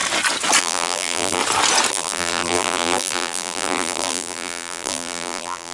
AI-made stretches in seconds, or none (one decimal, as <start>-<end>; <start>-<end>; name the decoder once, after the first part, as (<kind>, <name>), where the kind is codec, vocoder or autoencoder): 0.6-1.4 (vocoder, BigVGAN v2); 1.9-5.7